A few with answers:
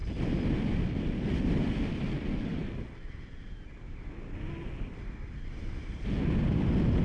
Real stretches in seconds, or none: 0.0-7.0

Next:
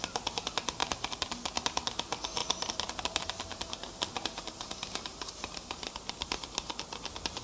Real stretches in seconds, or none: 0.0-0.8; 1.3-2.4; 6.1-7.4

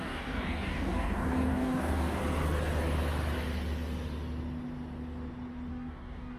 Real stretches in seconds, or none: 2.2-5.7